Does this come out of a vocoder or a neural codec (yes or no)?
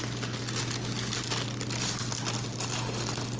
no